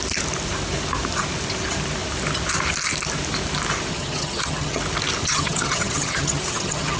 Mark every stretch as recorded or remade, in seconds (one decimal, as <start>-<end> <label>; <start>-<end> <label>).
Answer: 0.0-3.9 recorded; 3.9-4.8 remade; 4.8-5.2 recorded; 5.2-7.0 remade